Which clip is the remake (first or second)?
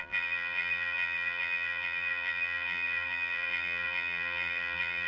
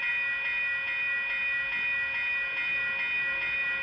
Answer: first